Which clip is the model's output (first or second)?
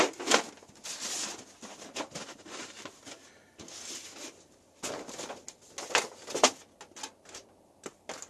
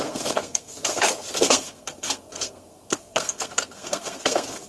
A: second